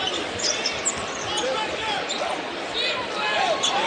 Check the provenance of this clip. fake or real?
real